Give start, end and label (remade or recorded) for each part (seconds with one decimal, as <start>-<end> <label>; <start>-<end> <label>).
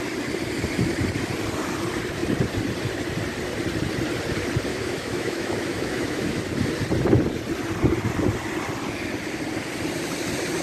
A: 0.0-4.7 recorded; 4.7-6.4 remade; 6.4-10.6 recorded